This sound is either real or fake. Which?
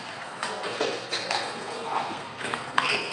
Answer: fake